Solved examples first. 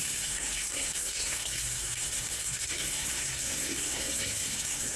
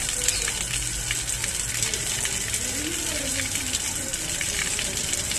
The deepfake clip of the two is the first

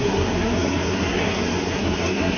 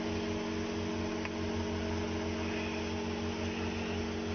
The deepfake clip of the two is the first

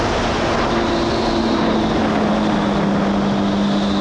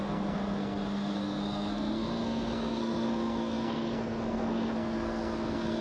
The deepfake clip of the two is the second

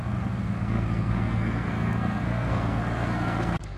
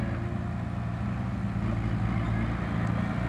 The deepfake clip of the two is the first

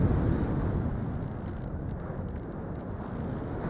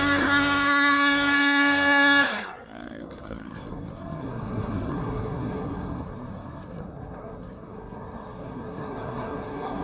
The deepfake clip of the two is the second